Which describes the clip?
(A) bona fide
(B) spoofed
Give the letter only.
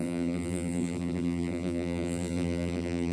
B